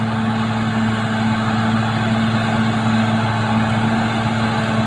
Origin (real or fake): real